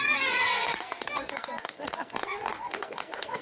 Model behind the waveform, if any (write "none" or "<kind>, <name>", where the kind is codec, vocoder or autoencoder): codec, SNAC